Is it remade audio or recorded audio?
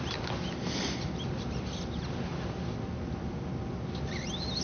recorded